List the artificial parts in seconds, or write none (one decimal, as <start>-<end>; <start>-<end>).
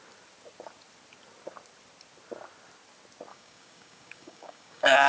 3.3-5.1